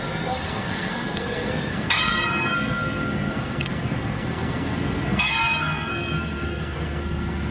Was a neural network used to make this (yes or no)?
yes